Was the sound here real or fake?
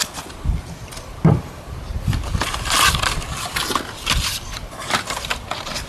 real